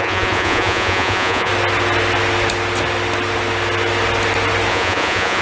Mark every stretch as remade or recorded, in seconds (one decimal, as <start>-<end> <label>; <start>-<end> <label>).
0.0-1.5 remade; 1.5-4.7 recorded; 4.7-5.4 remade